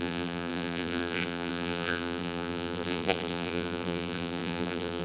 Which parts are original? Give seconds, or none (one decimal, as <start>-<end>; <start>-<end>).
none